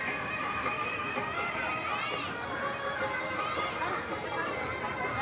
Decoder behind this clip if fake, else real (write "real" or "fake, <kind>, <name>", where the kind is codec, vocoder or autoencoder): fake, vocoder, BigVGAN v2